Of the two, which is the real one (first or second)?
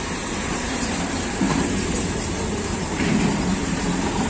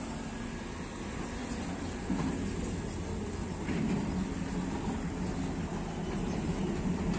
second